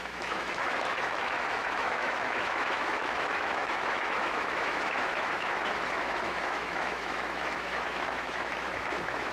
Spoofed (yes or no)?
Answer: yes